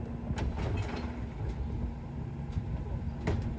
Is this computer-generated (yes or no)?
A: no